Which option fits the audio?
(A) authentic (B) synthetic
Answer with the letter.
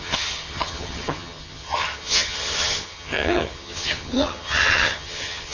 B